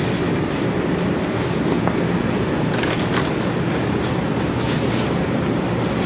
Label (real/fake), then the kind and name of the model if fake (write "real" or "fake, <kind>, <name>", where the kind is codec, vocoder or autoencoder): real